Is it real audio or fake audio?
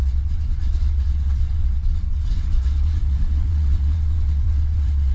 fake